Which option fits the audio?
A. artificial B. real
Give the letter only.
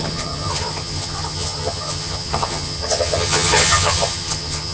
A